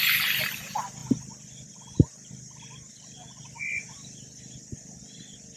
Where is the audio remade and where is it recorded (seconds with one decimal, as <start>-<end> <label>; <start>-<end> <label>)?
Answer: 0.0-5.6 recorded

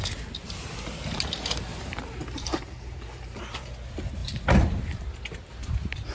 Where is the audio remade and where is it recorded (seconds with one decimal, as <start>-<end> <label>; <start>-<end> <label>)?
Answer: 0.0-1.7 recorded; 1.7-3.7 remade; 3.7-6.1 recorded

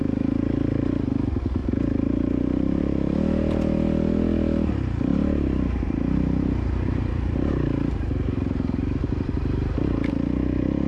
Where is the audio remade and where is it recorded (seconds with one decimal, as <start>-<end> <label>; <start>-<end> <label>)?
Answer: 0.0-1.6 recorded; 1.6-2.8 remade; 2.8-5.1 recorded; 5.1-10.1 remade; 10.1-10.9 recorded